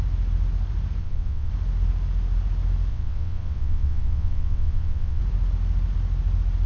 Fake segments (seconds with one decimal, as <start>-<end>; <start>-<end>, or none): 1.0-1.5; 2.9-5.2